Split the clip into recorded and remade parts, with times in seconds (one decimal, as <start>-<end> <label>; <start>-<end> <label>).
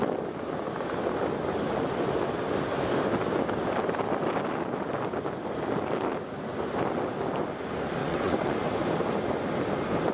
0.0-8.0 recorded; 8.0-8.7 remade; 8.7-10.1 recorded